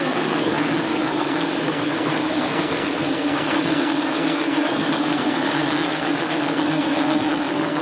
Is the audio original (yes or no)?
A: no